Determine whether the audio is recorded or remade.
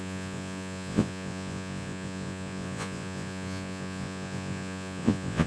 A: remade